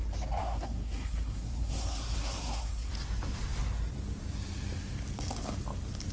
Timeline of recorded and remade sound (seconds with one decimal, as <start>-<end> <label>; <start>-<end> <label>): 0.0-0.4 recorded; 0.4-2.9 remade; 2.9-6.1 recorded